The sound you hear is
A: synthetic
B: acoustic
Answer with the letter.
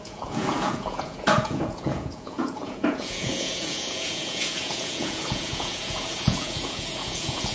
A